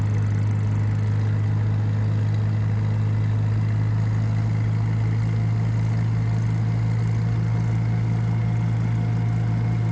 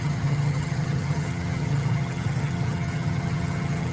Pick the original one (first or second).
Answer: first